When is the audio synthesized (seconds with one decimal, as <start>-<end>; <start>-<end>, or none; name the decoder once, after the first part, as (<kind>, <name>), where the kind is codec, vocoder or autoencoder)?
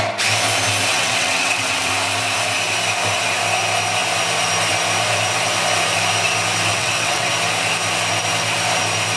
0.9-1.9 (vocoder, WaveNeXt); 6.7-7.3